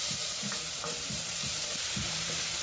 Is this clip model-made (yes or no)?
yes